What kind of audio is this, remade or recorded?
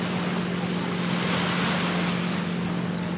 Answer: recorded